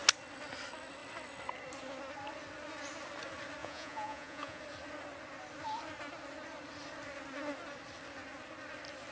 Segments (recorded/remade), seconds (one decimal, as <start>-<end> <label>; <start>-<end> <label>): 0.0-3.6 recorded; 3.6-4.6 remade; 4.6-9.1 recorded